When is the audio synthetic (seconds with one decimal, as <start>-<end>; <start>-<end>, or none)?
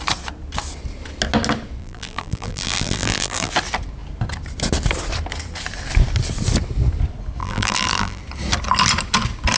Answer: 1.8-3.5; 7.4-8.2